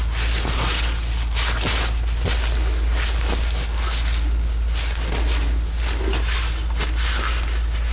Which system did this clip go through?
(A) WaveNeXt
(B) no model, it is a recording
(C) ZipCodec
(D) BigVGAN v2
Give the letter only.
B